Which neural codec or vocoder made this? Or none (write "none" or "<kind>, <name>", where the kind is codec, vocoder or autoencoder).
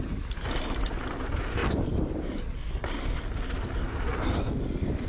vocoder, BigVGAN v2